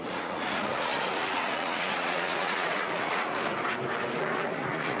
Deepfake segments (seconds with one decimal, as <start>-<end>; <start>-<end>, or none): 0.0-3.5; 4.2-5.0